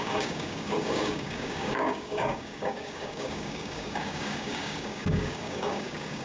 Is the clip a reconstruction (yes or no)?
yes